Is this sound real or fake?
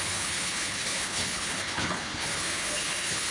fake